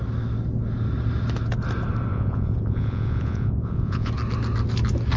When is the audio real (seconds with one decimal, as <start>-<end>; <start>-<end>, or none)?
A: 0.0-2.1; 4.1-5.2